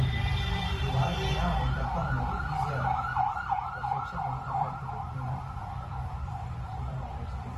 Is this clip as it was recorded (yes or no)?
no